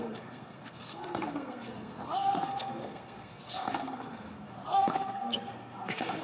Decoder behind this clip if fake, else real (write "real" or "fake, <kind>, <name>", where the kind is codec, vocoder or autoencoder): fake, codec, SNAC